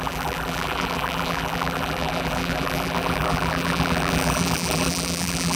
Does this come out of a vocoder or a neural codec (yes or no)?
yes